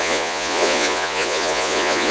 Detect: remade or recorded remade